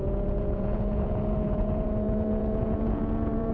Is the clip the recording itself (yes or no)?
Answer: no